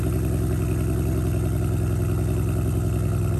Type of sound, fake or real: real